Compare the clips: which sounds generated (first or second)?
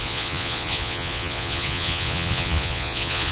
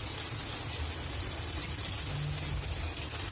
first